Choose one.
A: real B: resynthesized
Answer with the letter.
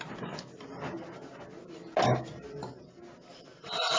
A